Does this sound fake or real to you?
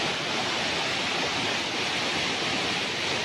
real